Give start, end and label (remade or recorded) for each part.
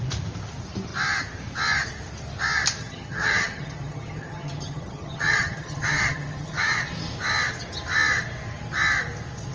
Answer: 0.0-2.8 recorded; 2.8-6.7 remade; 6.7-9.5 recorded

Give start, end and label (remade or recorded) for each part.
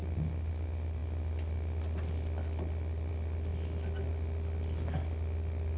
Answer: 0.0-5.8 recorded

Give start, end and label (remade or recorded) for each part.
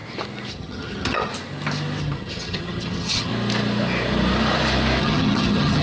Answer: 0.0-0.5 recorded; 0.5-1.3 remade; 1.3-2.0 recorded; 2.0-3.3 remade; 3.3-5.0 recorded; 5.0-5.8 remade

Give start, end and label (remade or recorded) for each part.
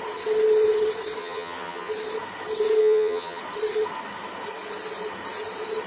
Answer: 0.0-1.2 recorded; 1.2-1.9 remade; 1.9-2.8 recorded; 2.8-3.4 remade; 3.4-5.9 recorded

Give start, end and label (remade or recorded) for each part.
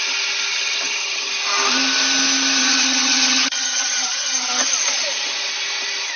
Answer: 0.0-0.5 recorded; 0.5-1.3 remade; 1.3-2.6 recorded; 2.6-4.5 remade; 4.5-6.2 recorded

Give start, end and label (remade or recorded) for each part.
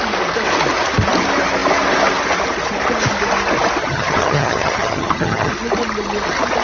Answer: 0.0-3.8 recorded; 3.8-5.5 remade; 5.5-6.6 recorded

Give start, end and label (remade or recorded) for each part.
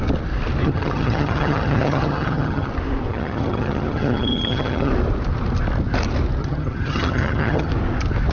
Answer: 0.0-0.6 recorded; 0.6-2.7 remade; 2.7-3.1 recorded; 3.1-4.9 remade; 4.9-6.4 recorded; 6.4-7.7 remade; 7.7-8.3 recorded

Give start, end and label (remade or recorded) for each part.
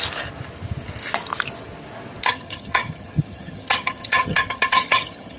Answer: 0.0-2.3 recorded; 2.3-5.4 remade